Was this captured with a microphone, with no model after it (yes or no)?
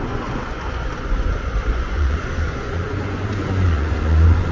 no